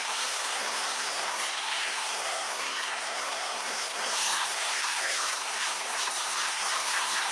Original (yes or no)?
no